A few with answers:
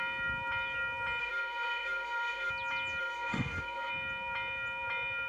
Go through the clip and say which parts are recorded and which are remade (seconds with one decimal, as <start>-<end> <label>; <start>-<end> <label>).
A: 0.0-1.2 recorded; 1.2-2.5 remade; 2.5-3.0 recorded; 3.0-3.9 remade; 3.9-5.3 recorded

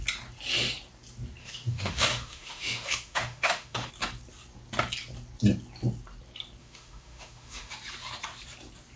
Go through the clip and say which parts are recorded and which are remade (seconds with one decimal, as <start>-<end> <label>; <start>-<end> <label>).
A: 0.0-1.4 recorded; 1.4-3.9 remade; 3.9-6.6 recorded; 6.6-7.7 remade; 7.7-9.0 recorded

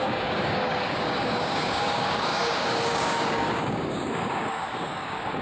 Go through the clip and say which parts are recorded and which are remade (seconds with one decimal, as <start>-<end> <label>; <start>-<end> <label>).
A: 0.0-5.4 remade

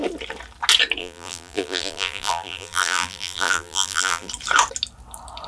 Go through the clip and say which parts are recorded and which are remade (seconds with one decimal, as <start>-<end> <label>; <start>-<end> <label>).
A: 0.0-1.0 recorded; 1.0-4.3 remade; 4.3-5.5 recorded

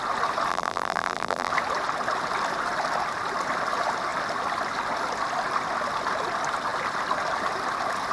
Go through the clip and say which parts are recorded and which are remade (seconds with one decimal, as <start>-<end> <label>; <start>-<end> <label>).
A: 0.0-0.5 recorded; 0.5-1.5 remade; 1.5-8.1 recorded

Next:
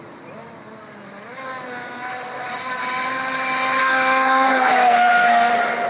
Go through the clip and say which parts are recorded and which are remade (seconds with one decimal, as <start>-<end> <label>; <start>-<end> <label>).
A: 0.0-3.8 recorded; 3.8-5.5 remade; 5.5-5.9 recorded

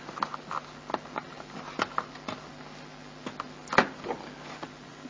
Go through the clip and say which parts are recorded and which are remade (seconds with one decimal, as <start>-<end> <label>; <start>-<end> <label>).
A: 0.0-5.1 recorded